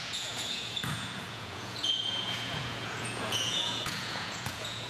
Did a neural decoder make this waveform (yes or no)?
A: yes